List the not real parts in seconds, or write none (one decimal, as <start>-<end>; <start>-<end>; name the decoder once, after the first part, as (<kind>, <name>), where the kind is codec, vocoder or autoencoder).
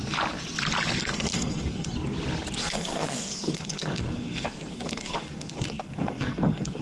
1.0-1.9 (codec, SNAC); 2.6-6.8